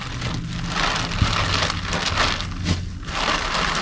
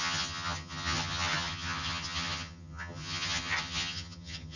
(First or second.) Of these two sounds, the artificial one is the second